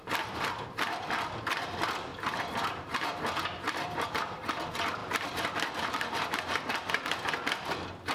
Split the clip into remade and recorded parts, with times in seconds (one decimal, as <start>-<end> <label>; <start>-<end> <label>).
0.0-5.0 recorded; 5.0-6.4 remade; 6.4-8.1 recorded